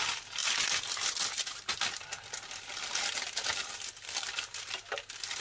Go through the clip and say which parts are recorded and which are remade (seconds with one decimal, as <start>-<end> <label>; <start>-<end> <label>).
0.0-5.4 recorded